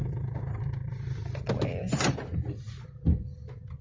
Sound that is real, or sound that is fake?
real